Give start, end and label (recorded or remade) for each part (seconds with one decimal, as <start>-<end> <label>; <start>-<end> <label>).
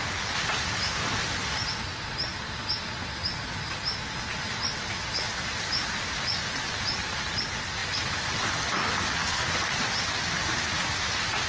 0.0-11.5 recorded